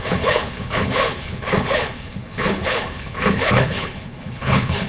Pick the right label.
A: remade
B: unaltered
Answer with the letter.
A